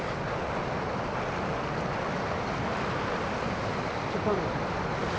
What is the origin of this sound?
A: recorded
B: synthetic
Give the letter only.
A